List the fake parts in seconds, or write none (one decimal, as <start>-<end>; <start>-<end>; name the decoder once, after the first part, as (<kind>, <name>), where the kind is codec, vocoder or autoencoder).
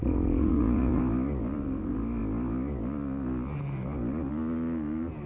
0.0-1.0 (vocoder, Vocos)